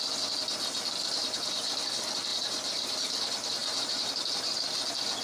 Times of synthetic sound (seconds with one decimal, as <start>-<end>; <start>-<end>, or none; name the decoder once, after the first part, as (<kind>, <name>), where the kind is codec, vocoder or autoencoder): 2.3-2.9 (vocoder, BigVGAN v2); 3.6-4.2